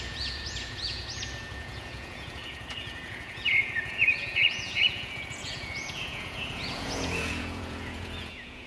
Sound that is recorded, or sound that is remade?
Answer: remade